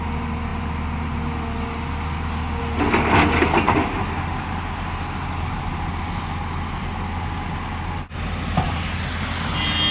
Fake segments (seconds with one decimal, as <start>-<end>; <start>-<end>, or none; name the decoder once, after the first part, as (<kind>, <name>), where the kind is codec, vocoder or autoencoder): none

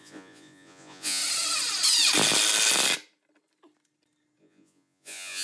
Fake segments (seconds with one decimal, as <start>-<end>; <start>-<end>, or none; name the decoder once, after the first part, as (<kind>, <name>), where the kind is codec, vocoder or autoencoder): 0.0-1.2 (vocoder, Vocos); 4.4-5.4

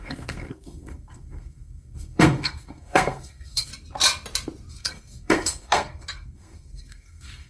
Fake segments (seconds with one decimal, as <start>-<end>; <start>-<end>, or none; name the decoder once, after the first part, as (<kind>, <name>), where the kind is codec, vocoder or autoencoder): 0.0-3.7 (codec, SNAC); 4.7-7.5

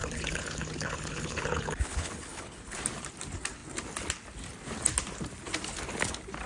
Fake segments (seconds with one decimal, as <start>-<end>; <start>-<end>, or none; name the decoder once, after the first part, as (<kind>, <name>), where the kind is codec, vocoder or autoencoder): 0.0-2.8 (codec, HILCodec)

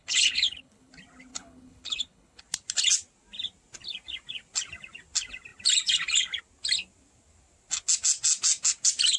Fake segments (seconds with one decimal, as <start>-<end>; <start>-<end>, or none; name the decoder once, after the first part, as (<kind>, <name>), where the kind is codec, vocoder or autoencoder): 0.0-0.9 (codec, HILCodec); 1.3-2.4